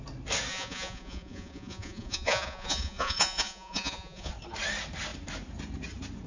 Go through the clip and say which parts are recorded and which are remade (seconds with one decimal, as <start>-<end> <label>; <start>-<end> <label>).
0.0-0.5 recorded; 0.5-4.3 remade; 4.3-6.3 recorded